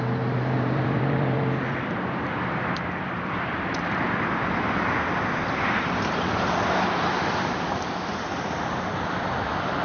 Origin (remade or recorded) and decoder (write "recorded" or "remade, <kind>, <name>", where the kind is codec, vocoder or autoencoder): remade, vocoder, BigVGAN v2